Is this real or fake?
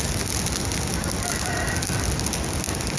real